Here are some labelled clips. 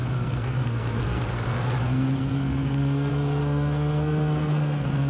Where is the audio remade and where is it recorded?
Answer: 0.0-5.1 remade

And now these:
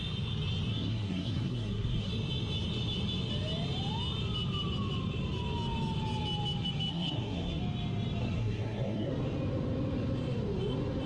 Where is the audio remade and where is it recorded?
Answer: 0.0-0.7 recorded; 0.7-2.1 remade; 2.1-6.9 recorded; 6.9-7.6 remade; 7.6-8.2 recorded; 8.2-9.1 remade; 9.1-11.1 recorded

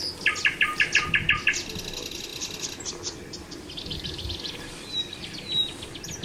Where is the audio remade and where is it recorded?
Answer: 0.0-6.2 recorded

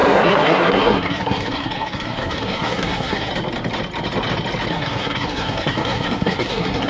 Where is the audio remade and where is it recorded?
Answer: 0.0-3.3 remade; 3.3-4.7 recorded; 4.7-6.9 remade